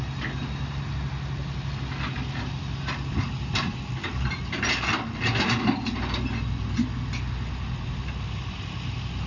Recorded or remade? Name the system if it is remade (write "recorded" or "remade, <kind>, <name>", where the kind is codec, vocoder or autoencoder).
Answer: recorded